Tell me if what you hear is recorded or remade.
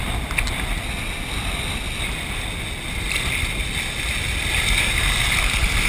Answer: recorded